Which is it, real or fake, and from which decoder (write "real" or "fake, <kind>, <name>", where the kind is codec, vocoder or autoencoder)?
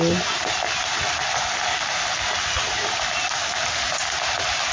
real